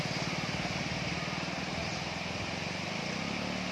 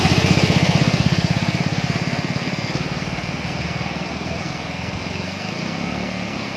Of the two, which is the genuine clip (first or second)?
first